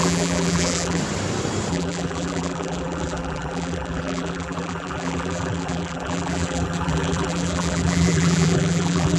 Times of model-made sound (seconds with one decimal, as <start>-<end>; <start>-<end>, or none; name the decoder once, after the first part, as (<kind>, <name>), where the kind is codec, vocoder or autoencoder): 0.0-1.0 (vocoder, BigVGAN v2); 1.7-9.2